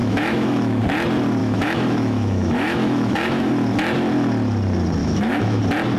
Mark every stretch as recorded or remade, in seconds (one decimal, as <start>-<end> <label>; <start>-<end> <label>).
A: 0.0-0.8 remade; 0.8-1.4 recorded; 1.4-3.5 remade; 3.5-5.0 recorded; 5.0-5.6 remade; 5.6-6.0 recorded